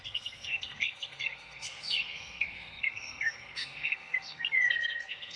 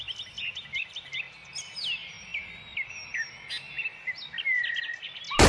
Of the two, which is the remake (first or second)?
first